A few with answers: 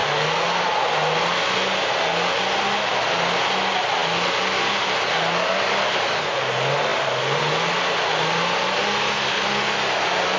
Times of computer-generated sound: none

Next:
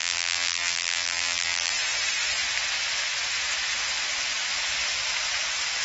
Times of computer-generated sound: 0.0-1.7

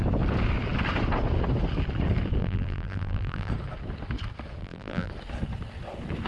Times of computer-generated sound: 2.4-3.5; 4.6-5.1

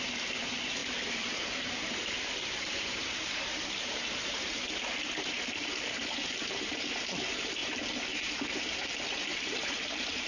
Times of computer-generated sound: 0.0-7.6; 8.3-10.3

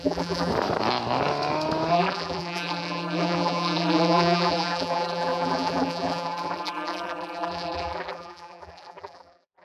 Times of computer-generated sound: 0.0-0.5; 1.9-9.6

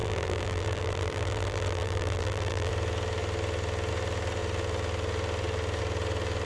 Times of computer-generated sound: 0.0-2.7

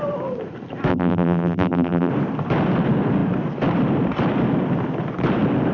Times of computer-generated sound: 0.9-2.1

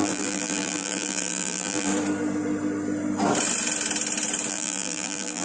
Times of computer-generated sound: 0.0-1.9; 4.5-5.4